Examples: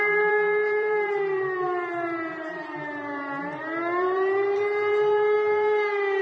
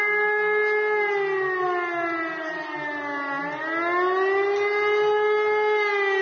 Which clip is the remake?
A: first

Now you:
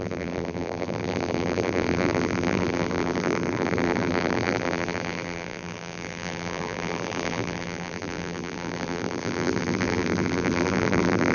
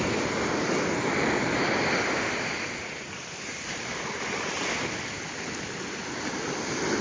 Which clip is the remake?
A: first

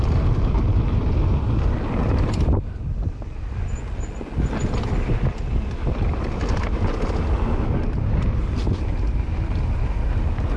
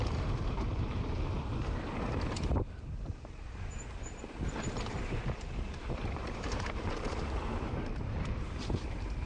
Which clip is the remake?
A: second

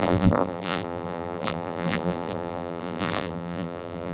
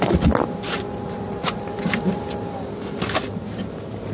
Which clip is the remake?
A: first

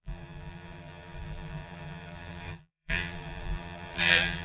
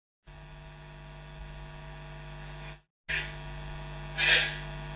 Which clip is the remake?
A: first